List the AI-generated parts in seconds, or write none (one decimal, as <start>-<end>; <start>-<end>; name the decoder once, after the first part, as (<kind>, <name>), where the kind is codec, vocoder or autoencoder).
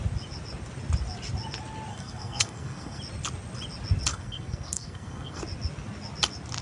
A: 1.9-3.0 (codec, SNAC); 4.1-5.4